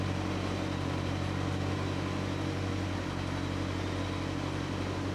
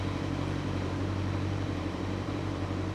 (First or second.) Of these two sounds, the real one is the first